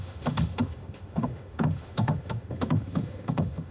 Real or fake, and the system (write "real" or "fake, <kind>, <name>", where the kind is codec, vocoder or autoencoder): fake, autoencoder, DAC-VAE